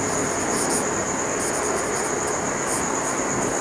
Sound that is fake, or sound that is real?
real